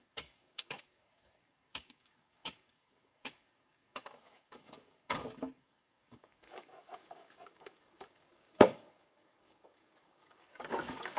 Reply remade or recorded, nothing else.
remade